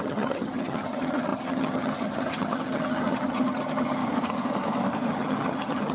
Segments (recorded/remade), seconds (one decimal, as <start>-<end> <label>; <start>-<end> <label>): 0.0-4.0 remade; 4.0-5.1 recorded; 5.1-5.9 remade